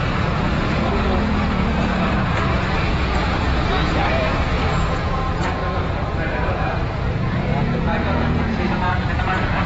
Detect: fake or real fake